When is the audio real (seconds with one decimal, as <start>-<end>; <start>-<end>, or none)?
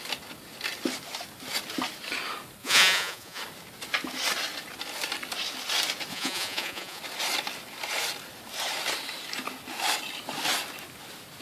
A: 0.0-2.6; 3.4-6.1; 7.0-11.4